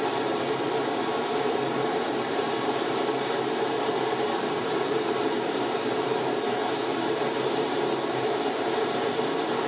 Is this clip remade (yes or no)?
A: yes